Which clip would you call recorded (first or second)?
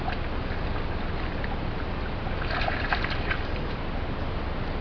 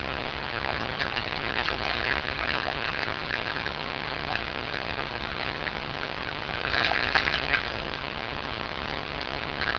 first